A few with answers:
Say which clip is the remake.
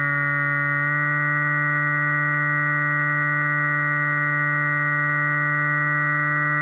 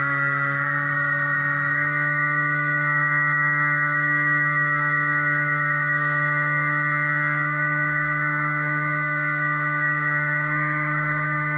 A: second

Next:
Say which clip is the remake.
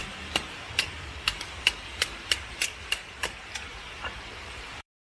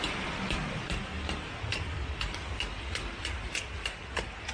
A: first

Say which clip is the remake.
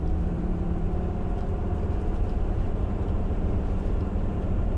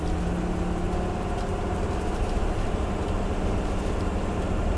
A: first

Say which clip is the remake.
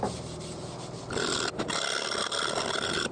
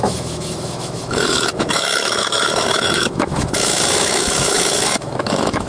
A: second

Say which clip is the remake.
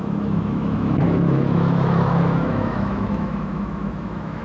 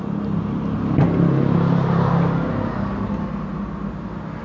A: first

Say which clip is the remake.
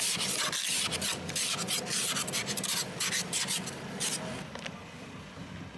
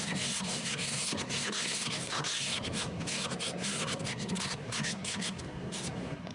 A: second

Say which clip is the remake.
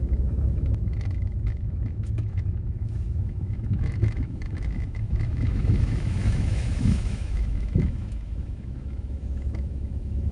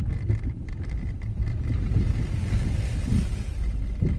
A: first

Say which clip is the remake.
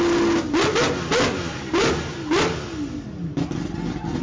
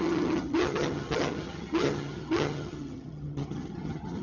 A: second